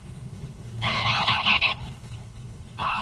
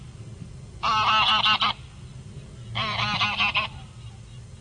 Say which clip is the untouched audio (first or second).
second